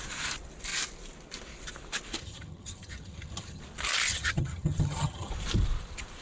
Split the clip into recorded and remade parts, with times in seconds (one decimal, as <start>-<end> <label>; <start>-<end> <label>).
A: 0.0-2.2 recorded; 2.2-3.6 remade; 3.6-4.1 recorded; 4.1-5.3 remade; 5.3-6.2 recorded